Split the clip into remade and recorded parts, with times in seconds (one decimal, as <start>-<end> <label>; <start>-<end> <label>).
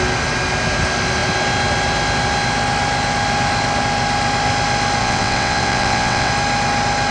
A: 0.0-5.0 recorded; 5.0-6.3 remade; 6.3-7.1 recorded